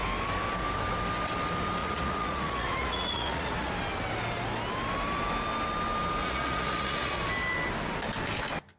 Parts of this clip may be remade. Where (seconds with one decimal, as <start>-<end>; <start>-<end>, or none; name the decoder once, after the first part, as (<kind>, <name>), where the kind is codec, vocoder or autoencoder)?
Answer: 1.8-3.7 (vocoder, Vocos); 6.2-7.2